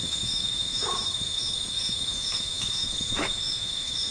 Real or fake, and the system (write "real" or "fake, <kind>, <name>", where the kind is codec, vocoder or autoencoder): fake, autoencoder, DAC-VAE